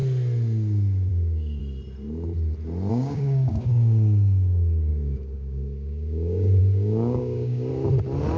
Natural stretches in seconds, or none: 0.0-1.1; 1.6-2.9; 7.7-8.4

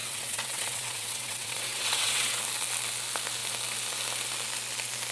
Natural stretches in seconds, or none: 2.4-5.1

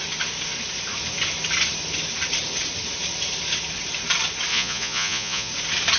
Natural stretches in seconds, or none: 0.0-4.5; 5.5-6.0

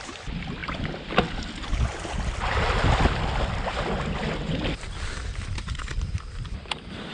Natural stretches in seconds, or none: 0.6-3.7; 4.2-5.2

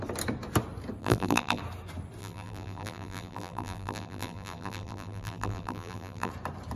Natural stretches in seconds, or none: 0.0-1.0; 1.6-2.2; 6.3-6.8

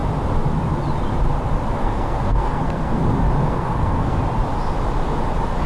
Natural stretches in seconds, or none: 0.0-1.8; 3.0-3.4; 4.2-5.7